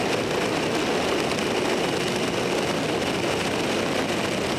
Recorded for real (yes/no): yes